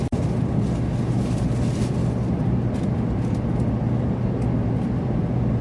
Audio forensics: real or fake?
real